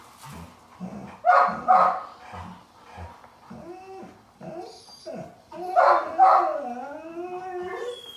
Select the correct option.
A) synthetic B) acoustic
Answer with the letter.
B